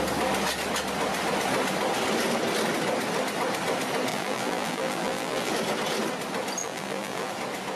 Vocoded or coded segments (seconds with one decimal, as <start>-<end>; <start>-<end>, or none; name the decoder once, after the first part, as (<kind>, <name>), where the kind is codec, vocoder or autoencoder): 4.1-5.5 (vocoder, BigVGAN v2); 6.6-7.3